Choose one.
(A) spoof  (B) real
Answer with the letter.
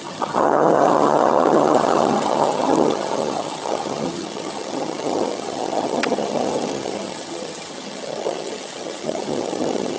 A